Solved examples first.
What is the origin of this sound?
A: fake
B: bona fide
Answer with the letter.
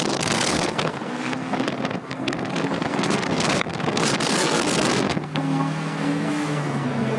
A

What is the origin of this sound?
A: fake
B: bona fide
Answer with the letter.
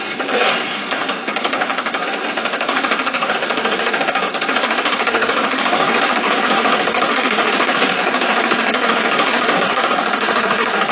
A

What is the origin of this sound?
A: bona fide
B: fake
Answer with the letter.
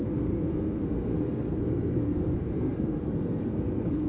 B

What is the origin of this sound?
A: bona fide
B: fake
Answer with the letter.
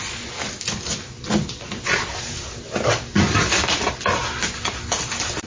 A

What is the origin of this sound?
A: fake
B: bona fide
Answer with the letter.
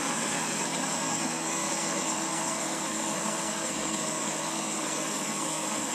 A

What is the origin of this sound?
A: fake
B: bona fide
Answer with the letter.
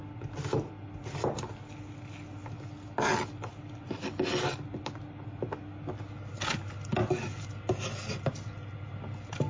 B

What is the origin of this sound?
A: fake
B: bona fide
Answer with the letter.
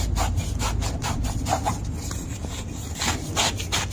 B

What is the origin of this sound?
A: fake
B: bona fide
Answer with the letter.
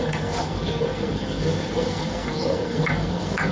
A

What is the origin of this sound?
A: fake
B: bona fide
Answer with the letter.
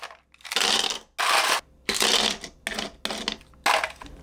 B